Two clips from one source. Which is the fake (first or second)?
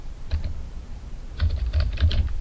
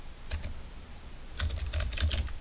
first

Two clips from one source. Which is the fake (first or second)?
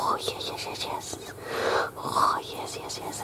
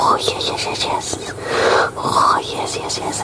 second